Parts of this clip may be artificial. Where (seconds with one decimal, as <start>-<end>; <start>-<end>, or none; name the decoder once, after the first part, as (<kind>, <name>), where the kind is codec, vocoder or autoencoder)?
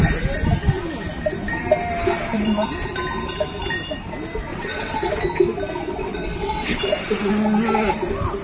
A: 4.5-5.1 (vocoder, WaveNeXt); 6.0-7.3